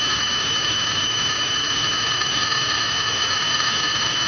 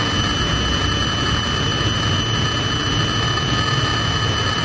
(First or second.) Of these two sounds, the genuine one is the second